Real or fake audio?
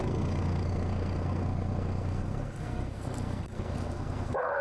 fake